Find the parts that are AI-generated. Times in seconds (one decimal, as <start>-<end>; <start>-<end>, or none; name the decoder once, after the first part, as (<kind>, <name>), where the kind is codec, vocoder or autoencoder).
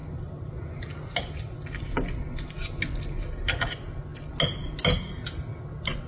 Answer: none